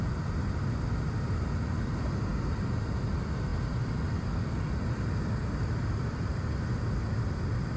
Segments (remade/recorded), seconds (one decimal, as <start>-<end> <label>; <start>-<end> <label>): 0.0-7.8 remade